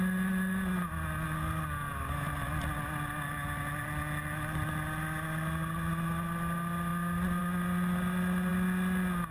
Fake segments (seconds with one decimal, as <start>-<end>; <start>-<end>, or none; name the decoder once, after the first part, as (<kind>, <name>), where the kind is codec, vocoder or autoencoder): none